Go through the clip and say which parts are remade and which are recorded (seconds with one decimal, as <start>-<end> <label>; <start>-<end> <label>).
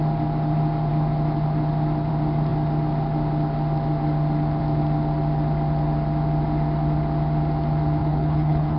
0.0-8.0 recorded; 8.0-8.8 remade